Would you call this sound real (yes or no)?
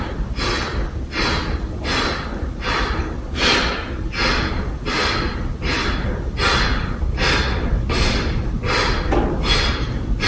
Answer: yes